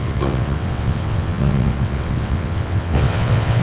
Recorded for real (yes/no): no